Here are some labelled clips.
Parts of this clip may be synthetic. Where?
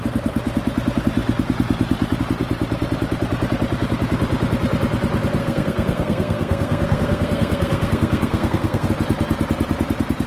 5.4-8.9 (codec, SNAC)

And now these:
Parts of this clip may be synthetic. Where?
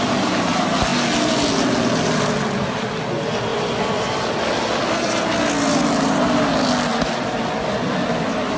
none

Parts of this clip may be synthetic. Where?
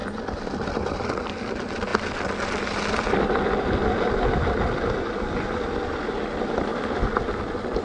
none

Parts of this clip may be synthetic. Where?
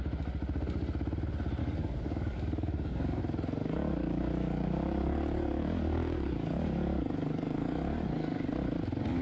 1.6-3.2 (codec, DAC); 3.6-8.5